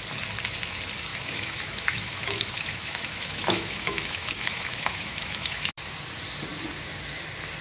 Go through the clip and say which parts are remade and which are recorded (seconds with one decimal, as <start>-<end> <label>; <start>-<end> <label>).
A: 0.0-1.1 recorded; 1.1-5.7 remade; 5.7-7.6 recorded